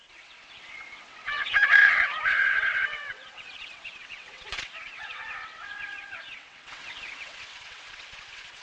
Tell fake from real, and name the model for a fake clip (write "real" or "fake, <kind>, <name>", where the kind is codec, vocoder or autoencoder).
fake, vocoder, WaveNeXt